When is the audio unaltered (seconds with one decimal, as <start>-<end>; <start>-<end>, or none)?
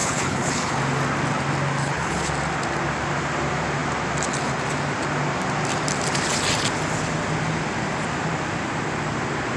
0.8-1.8; 2.3-9.6